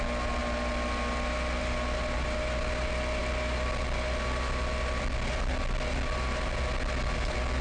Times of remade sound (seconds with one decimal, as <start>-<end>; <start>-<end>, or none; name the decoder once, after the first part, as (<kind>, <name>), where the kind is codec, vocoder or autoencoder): none

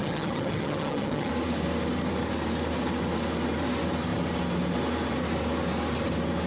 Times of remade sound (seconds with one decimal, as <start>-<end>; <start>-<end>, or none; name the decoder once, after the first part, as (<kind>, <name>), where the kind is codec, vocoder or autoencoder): 0.0-1.3 (vocoder, HiFi-GAN)